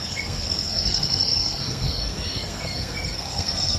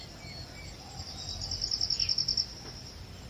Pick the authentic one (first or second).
second